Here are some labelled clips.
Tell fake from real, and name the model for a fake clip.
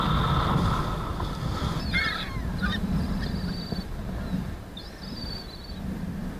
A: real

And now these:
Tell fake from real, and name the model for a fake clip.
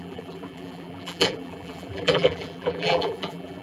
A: fake, vocoder, BigVGAN v2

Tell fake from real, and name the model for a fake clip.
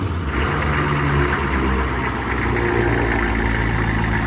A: real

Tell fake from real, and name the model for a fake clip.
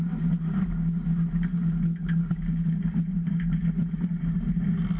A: real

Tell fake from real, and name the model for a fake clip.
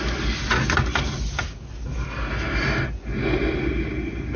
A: real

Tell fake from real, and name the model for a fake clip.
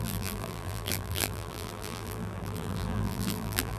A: fake, vocoder, BigVGAN v2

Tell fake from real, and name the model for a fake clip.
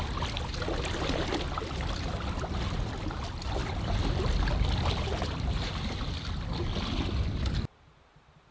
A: real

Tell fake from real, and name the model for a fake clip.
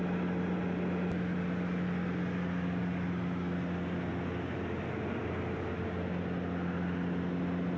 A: real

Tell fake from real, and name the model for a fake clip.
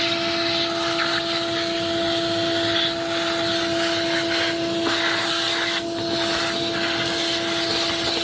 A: real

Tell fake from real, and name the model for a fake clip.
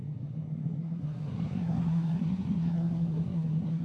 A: fake, codec, SNAC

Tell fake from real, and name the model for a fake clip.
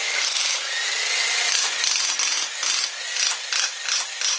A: real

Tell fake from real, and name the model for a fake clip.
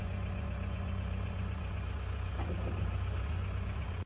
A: fake, vocoder, Vocos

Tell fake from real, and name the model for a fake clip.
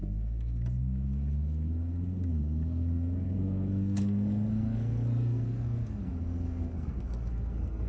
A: fake, codec, SNAC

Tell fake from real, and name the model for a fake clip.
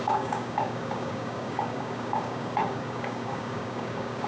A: fake, codec, DAC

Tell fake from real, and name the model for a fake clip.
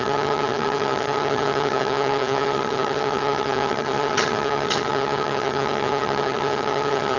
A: fake, vocoder, HiFi-GAN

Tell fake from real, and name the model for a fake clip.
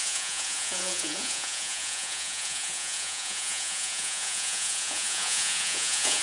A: fake, vocoder, Vocos